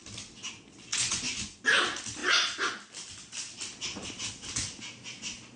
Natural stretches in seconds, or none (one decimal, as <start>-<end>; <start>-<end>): 0.0-0.9; 1.6-5.6